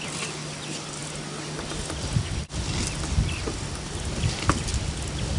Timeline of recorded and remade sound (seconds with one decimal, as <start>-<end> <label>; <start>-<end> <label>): 0.0-5.4 recorded